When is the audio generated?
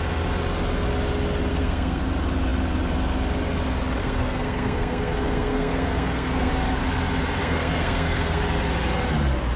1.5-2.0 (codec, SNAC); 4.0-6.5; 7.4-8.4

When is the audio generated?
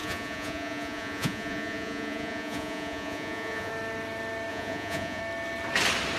0.0-3.7 (vocoder, Vocos); 4.5-5.2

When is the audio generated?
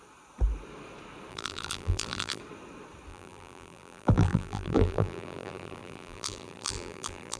1.3-2.4 (vocoder, BigVGAN v2); 3.1-7.4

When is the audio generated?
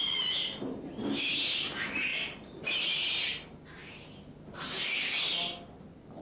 2.1-2.6 (vocoder, BigVGAN v2)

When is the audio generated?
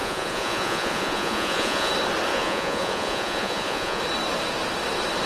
0.0-1.9 (vocoder, Vocos); 2.3-4.0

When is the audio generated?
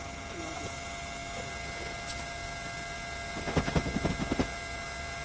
none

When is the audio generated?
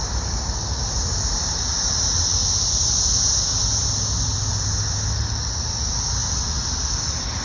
none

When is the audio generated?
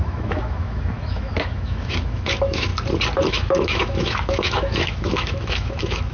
0.0-2.7 (autoencoder, DAC-VAE); 3.3-6.1